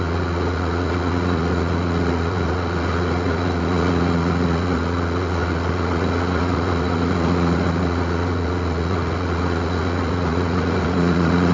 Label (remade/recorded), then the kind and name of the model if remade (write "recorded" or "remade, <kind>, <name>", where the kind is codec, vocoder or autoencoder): remade, vocoder, Vocos